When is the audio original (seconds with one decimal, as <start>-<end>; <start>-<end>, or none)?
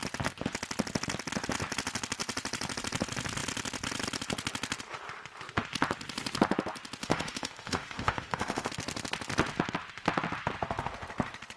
0.0-7.0; 8.7-11.6